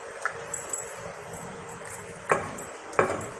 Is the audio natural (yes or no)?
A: yes